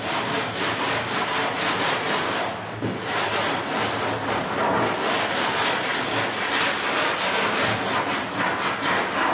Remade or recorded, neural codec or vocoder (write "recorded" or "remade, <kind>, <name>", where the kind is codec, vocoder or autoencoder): recorded